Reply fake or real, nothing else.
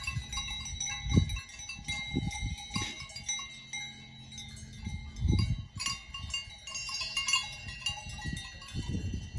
real